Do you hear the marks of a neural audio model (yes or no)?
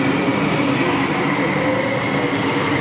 no